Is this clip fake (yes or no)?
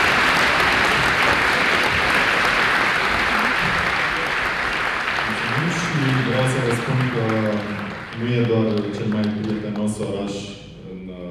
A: no